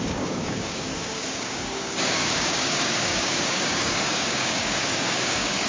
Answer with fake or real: fake